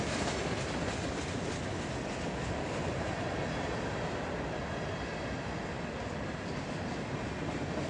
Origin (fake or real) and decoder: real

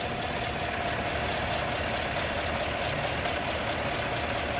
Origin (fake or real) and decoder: real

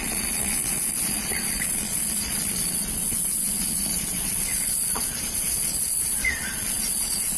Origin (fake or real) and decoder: fake, vocoder, Vocos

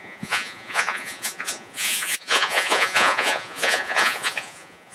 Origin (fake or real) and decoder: fake, vocoder, Vocos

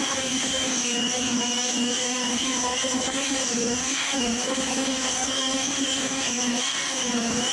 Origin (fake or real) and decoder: fake, codec, DAC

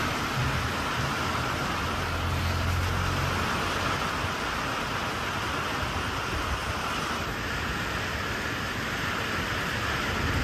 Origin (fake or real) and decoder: real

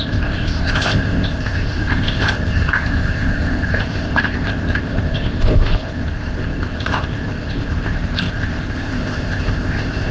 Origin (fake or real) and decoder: fake, codec, ZipCodec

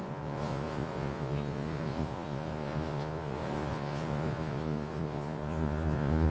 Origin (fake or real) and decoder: fake, vocoder, Vocos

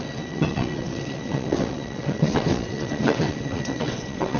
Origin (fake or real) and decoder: fake, vocoder, WaveNeXt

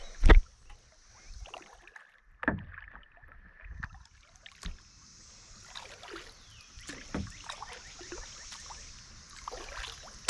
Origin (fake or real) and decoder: real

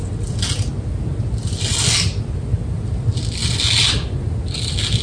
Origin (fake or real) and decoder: real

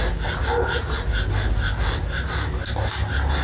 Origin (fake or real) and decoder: real